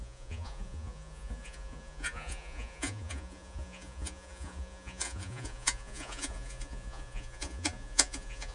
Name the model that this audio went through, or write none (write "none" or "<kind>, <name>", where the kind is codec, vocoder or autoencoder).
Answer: vocoder, Vocos